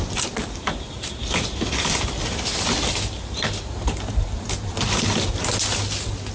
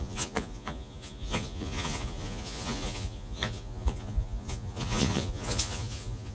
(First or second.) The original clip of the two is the first